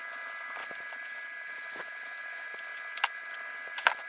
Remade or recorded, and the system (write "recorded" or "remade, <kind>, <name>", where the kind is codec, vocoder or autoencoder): recorded